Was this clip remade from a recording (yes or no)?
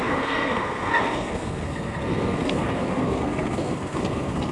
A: yes